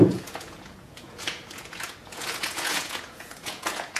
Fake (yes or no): yes